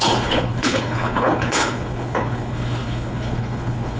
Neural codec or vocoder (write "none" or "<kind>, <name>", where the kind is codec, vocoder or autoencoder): codec, HILCodec